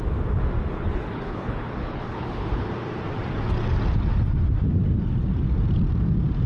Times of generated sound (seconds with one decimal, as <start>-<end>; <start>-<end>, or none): 0.7-2.7